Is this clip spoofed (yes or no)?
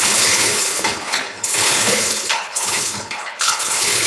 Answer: yes